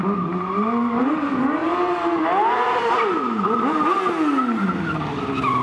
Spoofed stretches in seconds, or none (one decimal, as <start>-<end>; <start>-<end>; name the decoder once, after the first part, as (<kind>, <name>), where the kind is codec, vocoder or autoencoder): none